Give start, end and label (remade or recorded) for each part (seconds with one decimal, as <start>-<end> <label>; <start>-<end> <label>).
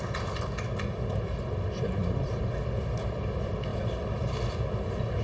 0.0-2.0 recorded; 2.0-2.5 remade; 2.5-3.7 recorded; 3.7-4.4 remade; 4.4-5.2 recorded